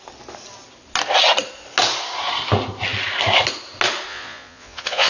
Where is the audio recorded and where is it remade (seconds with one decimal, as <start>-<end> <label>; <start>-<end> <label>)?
0.0-4.1 recorded; 4.1-5.1 remade